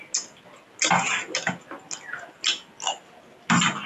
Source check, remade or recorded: recorded